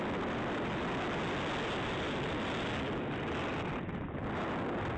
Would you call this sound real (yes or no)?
yes